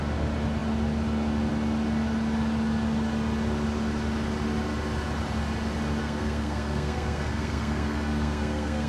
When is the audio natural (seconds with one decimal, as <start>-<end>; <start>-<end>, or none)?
0.0-6.0